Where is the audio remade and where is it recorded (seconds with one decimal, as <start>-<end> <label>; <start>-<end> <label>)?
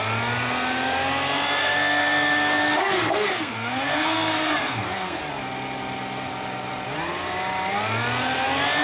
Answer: 0.0-1.6 recorded; 1.6-5.2 remade; 5.2-8.8 recorded